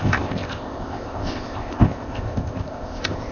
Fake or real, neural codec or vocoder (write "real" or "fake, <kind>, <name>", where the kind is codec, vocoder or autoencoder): fake, codec, ZipCodec